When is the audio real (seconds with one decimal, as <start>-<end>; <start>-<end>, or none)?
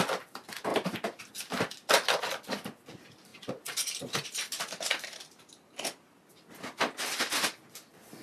0.0-3.3; 5.5-8.2